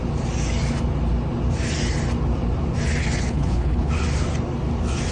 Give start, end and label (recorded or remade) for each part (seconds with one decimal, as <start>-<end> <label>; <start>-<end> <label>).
0.0-3.0 recorded; 3.0-3.9 remade; 3.9-5.1 recorded